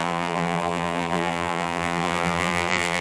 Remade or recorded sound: remade